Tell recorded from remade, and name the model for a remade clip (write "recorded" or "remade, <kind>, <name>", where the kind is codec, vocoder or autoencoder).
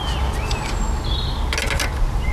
recorded